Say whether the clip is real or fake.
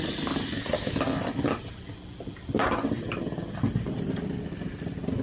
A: real